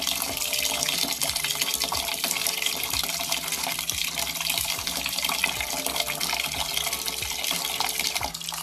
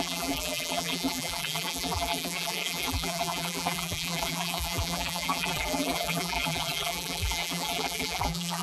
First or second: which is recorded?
first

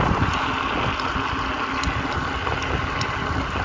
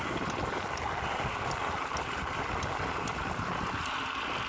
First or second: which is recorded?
first